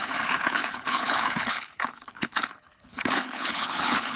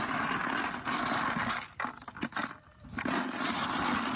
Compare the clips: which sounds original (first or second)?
second